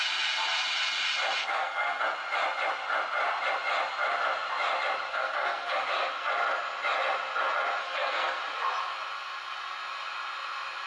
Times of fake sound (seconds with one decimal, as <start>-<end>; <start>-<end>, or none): 1.4-2.0; 5.1-6.3; 7.8-8.4